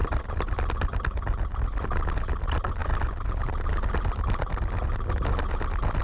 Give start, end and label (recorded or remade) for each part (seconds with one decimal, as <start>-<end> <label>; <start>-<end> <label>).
0.0-6.0 recorded